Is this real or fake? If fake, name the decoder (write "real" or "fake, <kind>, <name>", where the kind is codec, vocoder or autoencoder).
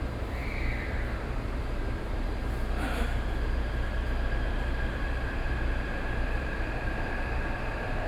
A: fake, vocoder, BigVGAN v2